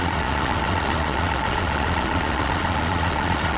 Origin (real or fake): fake